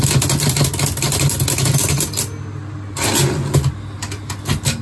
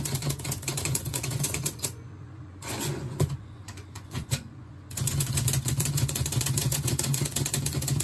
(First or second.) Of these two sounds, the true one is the first